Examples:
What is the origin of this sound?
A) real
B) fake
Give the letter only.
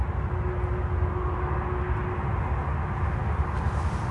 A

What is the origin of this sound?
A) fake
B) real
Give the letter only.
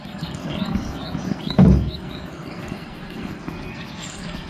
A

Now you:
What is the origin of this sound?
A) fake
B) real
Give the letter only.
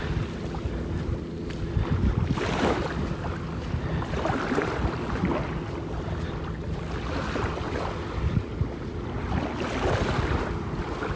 B